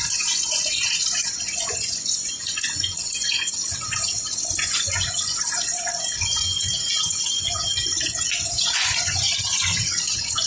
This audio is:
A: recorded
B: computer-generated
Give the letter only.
B